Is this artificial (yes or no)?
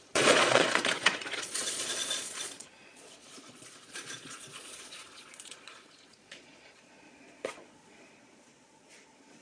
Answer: yes